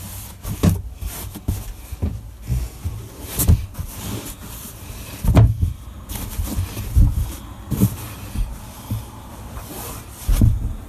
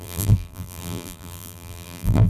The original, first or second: first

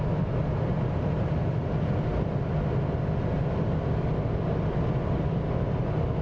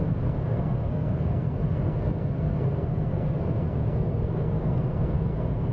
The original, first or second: first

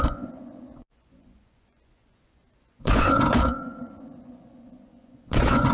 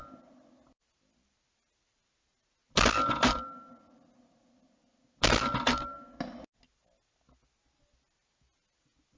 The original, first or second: second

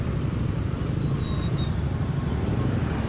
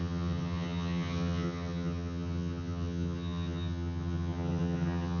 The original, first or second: first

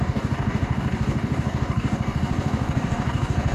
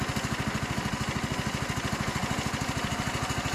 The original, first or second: second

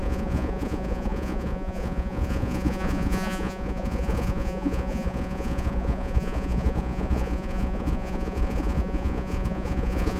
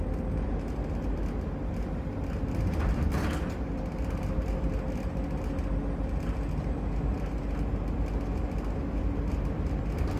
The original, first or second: second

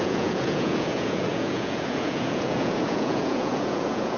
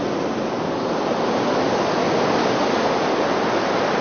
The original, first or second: second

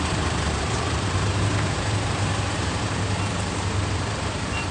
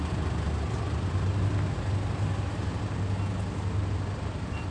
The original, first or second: second